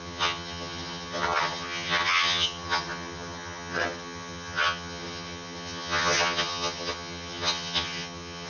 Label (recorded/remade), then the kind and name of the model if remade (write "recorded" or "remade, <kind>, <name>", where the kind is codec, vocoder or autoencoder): remade, vocoder, HiFi-GAN